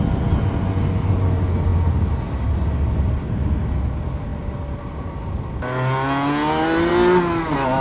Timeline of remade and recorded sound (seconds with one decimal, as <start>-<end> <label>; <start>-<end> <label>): 0.0-7.8 recorded

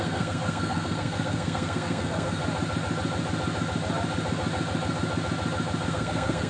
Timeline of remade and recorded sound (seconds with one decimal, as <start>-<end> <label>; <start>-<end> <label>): 0.0-2.4 remade; 2.4-5.9 recorded; 5.9-6.5 remade

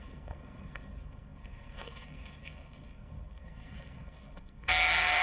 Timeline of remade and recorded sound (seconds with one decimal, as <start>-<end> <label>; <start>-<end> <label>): 0.0-5.2 remade